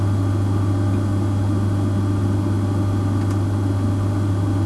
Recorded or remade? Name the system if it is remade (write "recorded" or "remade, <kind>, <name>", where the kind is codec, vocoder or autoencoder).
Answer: recorded